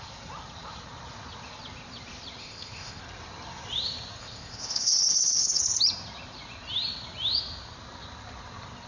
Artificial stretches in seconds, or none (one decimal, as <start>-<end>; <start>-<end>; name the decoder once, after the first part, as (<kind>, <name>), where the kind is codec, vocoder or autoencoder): 2.4-3.0 (codec, ZipCodec); 4.2-5.6